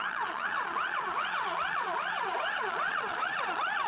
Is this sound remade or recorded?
remade